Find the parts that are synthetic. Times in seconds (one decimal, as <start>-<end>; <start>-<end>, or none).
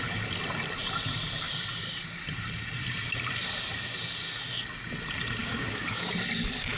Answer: 5.4-6.1